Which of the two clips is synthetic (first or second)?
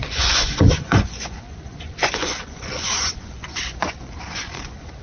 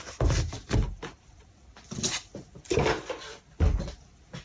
first